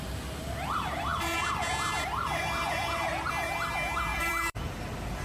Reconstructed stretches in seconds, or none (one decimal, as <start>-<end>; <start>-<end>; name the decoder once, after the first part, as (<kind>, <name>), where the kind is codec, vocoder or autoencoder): 1.1-3.3 (vocoder, BigVGAN v2); 4.1-4.7